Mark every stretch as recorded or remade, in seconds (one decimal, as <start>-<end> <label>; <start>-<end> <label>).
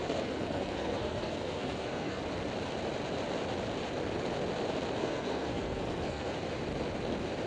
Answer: 0.0-2.2 remade; 2.2-5.0 recorded; 5.0-6.3 remade; 6.3-7.5 recorded